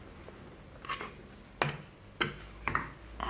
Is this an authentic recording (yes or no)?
yes